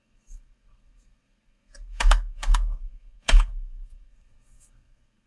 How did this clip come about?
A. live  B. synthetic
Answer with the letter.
B